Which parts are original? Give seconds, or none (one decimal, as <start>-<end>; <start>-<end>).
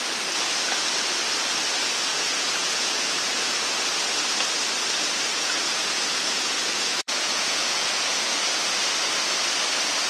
0.0-2.1; 3.7-5.3; 8.3-10.1